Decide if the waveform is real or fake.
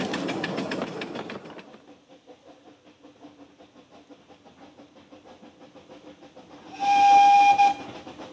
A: real